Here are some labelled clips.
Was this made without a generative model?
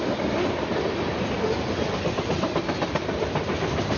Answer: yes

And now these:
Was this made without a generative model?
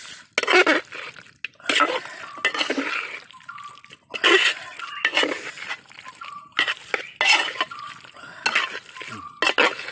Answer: yes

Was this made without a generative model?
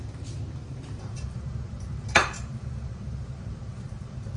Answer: no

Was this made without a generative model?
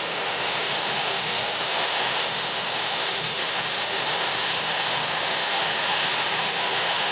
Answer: no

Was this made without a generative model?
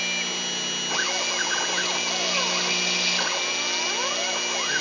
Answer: yes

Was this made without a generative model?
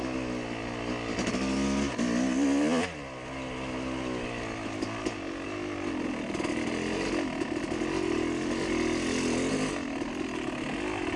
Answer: yes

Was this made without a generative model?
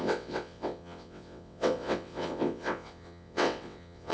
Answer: no